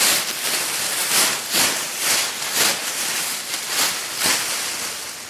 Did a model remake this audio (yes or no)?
no